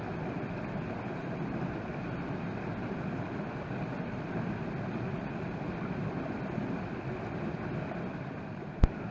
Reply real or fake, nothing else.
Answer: real